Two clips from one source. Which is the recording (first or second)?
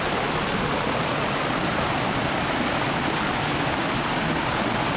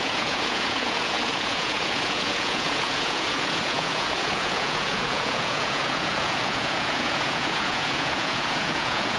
first